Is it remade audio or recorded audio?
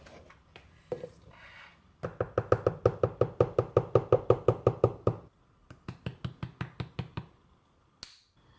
recorded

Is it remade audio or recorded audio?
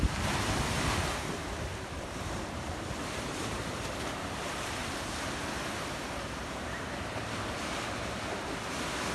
remade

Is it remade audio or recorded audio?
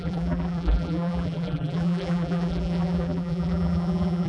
remade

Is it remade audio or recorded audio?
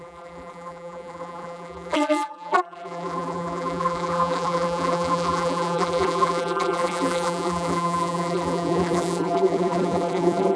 remade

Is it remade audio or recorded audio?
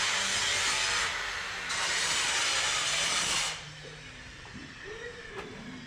remade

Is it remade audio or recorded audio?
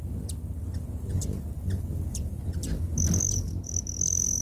recorded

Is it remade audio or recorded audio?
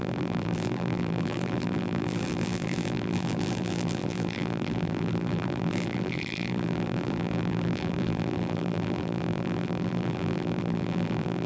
remade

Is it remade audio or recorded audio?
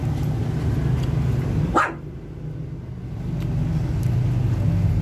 recorded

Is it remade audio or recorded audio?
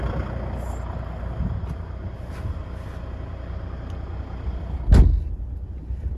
recorded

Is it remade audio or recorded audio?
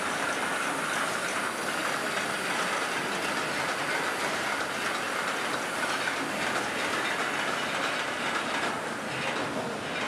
recorded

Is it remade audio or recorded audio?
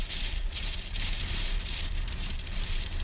remade